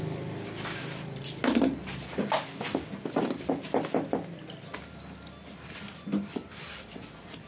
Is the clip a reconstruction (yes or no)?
no